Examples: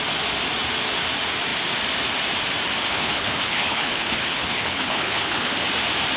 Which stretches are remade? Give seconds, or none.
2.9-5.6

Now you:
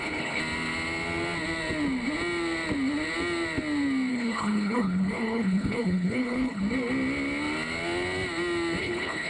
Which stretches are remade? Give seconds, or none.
0.0-0.4; 4.1-6.6; 8.8-9.3